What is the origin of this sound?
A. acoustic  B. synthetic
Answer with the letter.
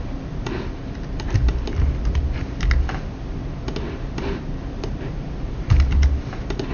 A